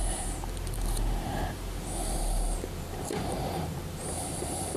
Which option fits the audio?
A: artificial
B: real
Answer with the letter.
A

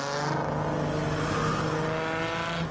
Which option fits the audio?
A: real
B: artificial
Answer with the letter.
A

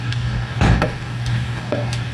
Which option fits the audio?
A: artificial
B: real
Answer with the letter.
A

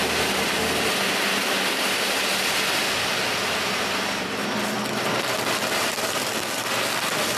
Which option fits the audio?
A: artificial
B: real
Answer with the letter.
B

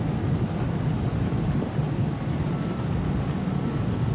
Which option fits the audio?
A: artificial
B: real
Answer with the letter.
B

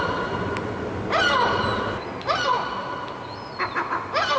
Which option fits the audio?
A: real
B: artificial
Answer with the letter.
A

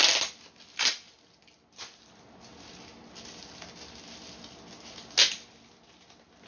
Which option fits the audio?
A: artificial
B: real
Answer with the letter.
B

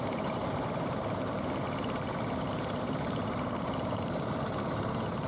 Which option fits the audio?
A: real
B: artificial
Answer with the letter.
B